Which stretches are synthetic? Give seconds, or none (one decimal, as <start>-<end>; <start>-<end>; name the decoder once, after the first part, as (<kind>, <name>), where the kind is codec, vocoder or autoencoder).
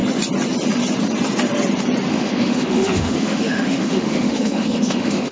2.1-5.3 (autoencoder, DAC-VAE)